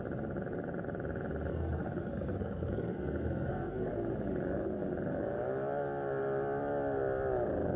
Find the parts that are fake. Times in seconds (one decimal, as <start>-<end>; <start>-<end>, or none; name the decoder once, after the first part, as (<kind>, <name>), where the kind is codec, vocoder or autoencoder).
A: 1.5-3.9 (codec, SNAC)